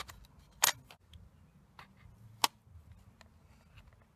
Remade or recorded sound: recorded